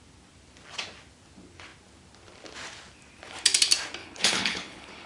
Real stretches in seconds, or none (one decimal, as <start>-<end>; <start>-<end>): 0.0-4.0